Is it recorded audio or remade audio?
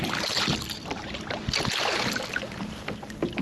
recorded